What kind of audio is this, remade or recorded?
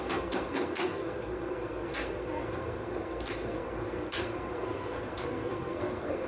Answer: remade